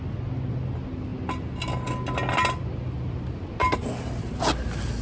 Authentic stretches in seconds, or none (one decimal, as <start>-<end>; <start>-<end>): 0.0-5.0